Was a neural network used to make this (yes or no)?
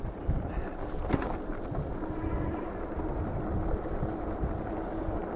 no